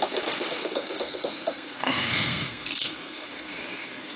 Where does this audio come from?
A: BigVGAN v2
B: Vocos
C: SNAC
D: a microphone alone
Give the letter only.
C